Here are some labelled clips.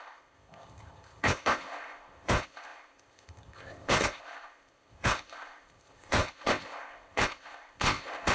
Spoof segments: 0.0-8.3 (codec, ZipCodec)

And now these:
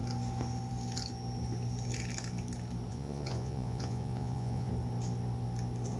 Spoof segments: 2.9-4.7 (vocoder, Vocos)

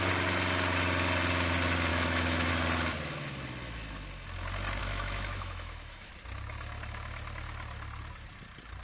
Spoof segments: 1.9-2.5 (autoencoder, DAC-VAE); 4.8-6.1

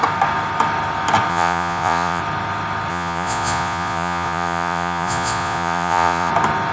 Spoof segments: 1.3-2.2 (vocoder, Vocos); 2.9-6.3

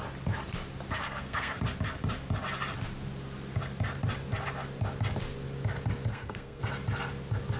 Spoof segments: 1.0-1.6 (codec, SNAC); 6.1-6.6

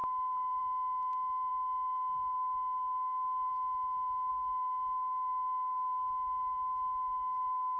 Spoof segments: 0.0-0.6 (codec, DAC); 1.5-3.5; 4.3-7.8

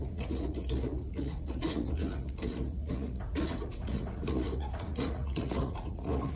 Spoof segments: 0.0-6.4 (vocoder, Vocos)